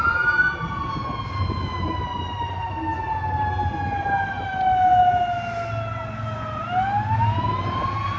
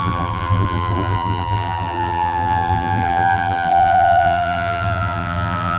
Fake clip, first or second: second